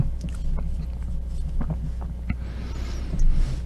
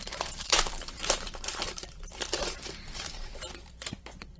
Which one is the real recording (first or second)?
first